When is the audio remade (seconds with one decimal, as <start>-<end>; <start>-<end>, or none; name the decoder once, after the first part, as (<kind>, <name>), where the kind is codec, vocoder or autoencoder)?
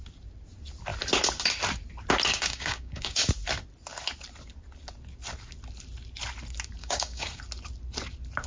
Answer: 2.3-3.3 (codec, DAC); 6.8-7.4